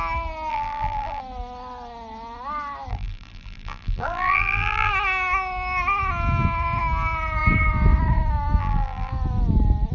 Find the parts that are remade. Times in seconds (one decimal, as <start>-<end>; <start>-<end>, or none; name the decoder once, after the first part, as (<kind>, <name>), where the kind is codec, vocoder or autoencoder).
0.5-1.2 (vocoder, BigVGAN v2); 2.9-4.9; 8.6-9.1